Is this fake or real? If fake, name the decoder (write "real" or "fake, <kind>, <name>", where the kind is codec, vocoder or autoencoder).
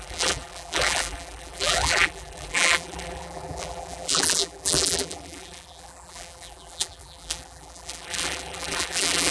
fake, vocoder, BigVGAN v2